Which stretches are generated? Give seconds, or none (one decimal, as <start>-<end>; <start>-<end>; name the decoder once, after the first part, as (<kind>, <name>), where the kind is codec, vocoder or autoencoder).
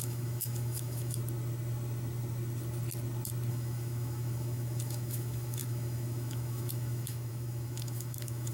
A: 0.0-1.2 (autoencoder, DAC-VAE); 3.5-8.5